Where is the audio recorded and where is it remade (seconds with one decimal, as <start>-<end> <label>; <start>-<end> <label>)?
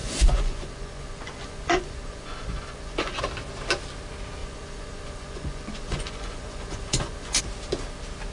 0.0-3.2 remade; 3.2-4.4 recorded; 4.4-7.4 remade; 7.4-8.3 recorded